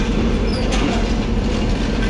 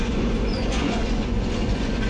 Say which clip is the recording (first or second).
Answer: first